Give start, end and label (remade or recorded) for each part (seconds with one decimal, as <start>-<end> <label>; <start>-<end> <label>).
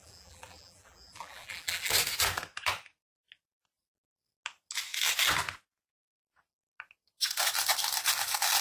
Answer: 0.0-1.9 remade; 1.9-8.6 recorded